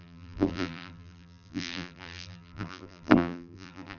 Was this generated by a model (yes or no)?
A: yes